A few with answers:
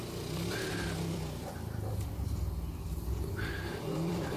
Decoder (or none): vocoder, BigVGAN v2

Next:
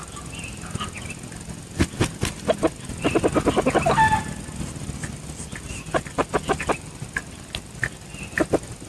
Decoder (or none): none